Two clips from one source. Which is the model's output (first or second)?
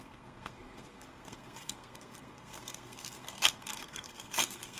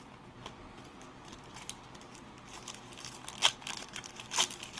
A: first